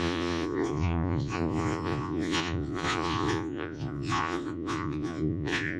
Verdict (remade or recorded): remade